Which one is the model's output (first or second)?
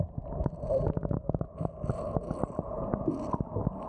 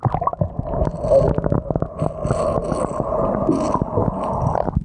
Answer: first